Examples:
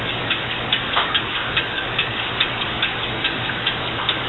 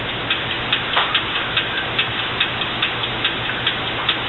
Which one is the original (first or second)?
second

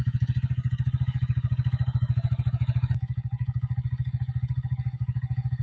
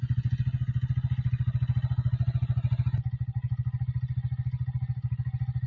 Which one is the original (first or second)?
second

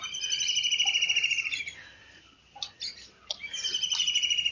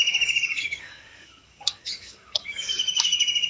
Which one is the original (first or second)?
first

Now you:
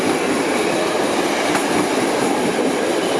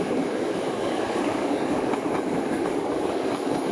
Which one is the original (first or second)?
first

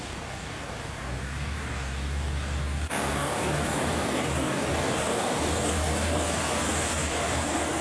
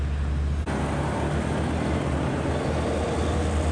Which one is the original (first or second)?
second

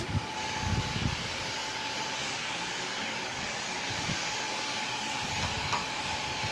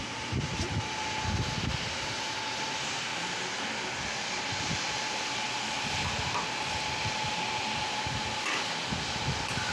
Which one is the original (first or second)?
second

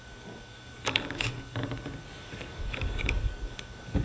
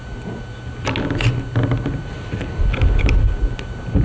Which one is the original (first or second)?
second